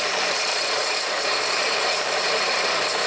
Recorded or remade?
remade